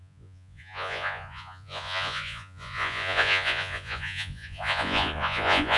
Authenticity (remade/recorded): remade